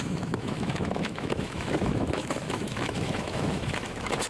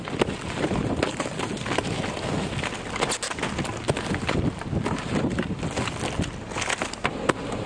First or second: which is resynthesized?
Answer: first